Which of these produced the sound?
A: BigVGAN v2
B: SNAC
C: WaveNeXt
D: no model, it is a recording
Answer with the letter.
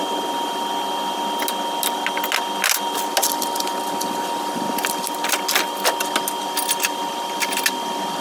D